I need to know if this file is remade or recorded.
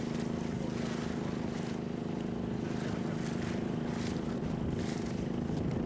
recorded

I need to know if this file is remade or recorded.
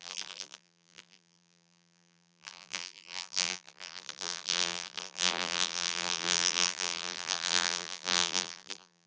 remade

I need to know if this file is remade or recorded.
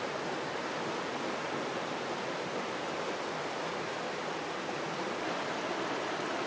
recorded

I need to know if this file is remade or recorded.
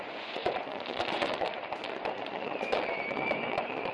remade